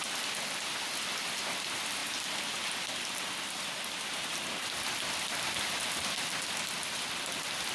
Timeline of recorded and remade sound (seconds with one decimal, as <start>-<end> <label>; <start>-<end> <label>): 0.0-7.7 recorded